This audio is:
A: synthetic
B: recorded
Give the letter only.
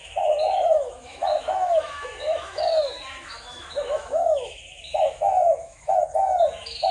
A